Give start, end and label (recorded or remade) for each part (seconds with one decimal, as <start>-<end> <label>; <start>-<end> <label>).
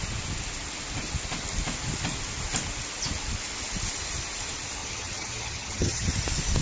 0.0-4.8 recorded; 4.8-6.1 remade; 6.1-6.6 recorded